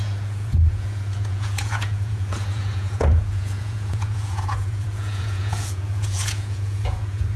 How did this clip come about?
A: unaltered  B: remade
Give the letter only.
B